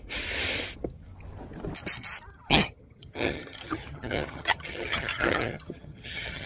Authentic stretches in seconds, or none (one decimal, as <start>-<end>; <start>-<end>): 0.0-2.3